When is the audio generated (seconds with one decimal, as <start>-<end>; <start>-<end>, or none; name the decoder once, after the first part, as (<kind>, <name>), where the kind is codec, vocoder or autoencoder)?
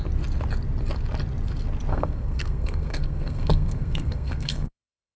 1.9-5.2 (codec, SNAC)